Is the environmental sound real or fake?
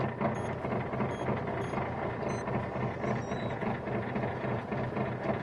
real